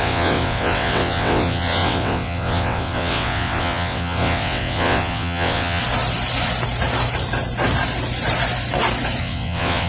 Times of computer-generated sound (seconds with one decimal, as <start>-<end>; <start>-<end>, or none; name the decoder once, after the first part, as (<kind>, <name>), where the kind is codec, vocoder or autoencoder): 0.0-5.8 (vocoder, WaveNeXt); 9.2-9.9